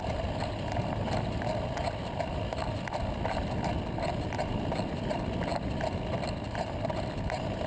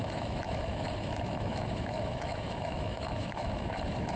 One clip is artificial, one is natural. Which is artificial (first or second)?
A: second